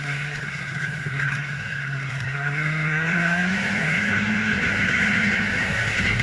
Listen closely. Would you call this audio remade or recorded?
remade